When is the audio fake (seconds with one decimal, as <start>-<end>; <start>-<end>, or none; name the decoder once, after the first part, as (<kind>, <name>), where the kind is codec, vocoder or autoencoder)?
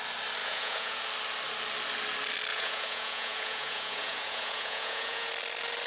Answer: 0.4-1.0 (vocoder, Vocos); 2.5-5.3